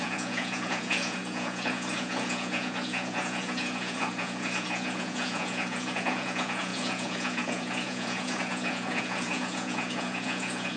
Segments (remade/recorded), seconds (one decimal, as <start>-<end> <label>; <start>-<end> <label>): 0.0-10.8 remade